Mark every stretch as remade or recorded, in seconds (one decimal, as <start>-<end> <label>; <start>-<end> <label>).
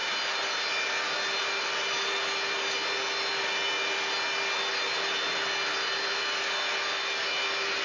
0.0-7.8 recorded